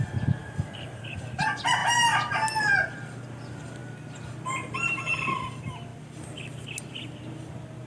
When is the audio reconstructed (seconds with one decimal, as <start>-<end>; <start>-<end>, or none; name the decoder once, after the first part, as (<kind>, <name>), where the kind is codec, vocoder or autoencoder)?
0.4-1.4 (vocoder, BigVGAN v2)